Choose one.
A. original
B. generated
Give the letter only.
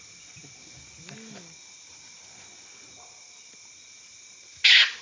A